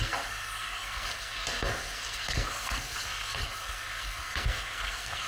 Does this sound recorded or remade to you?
remade